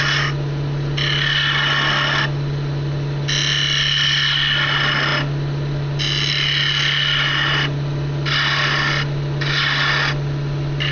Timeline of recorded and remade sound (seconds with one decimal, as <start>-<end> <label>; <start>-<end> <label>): 0.0-10.9 recorded